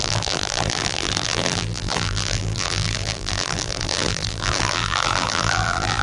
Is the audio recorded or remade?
remade